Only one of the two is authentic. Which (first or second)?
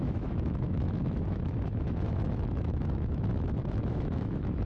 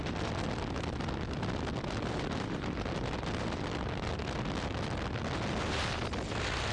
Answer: second